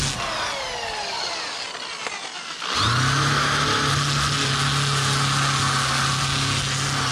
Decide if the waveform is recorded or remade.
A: recorded